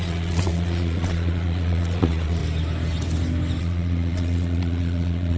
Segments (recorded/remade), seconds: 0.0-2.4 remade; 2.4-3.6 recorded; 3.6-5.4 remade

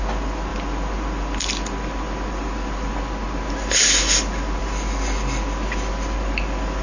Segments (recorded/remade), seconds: 0.0-6.8 recorded